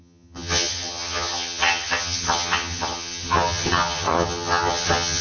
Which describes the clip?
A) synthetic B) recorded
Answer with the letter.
A